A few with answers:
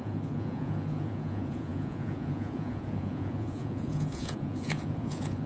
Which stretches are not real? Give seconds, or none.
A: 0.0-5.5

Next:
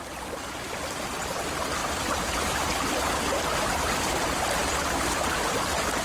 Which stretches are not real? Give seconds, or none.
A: none

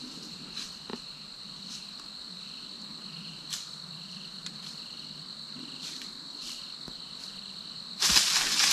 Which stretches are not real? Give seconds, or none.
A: none

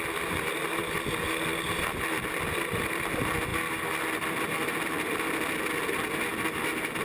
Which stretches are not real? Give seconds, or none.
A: none

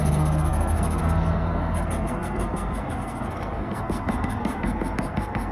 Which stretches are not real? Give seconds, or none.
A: 0.0-5.5

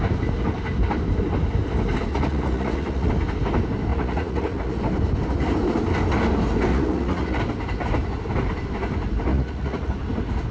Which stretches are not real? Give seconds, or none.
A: 2.1-3.1; 3.9-4.8; 6.7-7.4; 9.3-9.9

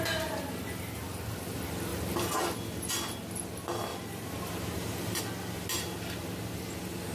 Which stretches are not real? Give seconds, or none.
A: 3.9-5.2

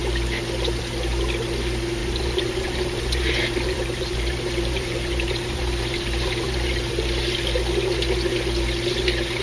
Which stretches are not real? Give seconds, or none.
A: 2.0-6.9